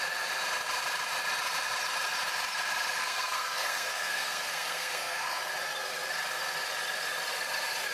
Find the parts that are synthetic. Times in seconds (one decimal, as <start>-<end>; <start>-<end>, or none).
3.0-5.4